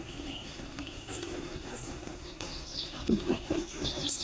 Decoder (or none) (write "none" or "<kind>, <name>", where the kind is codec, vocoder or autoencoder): codec, SNAC